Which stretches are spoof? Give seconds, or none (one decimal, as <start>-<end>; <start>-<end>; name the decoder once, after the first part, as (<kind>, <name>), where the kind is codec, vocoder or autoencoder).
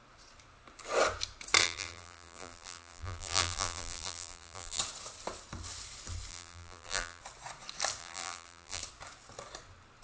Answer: 1.6-4.8 (vocoder, BigVGAN v2); 6.3-7.2; 8.0-8.8